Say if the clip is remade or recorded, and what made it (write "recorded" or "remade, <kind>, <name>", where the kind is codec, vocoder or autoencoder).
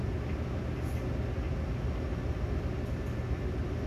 recorded